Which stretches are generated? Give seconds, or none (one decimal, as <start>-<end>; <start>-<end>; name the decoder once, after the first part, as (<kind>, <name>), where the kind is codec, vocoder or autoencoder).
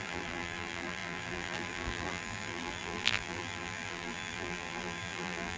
0.0-5.6 (vocoder, BigVGAN v2)